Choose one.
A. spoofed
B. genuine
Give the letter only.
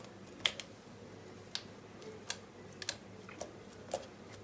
B